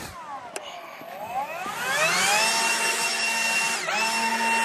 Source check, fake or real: real